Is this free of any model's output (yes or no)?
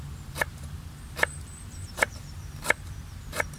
no